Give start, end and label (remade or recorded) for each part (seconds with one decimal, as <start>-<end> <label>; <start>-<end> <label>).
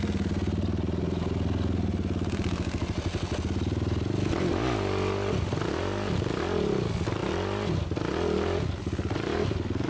0.0-9.9 recorded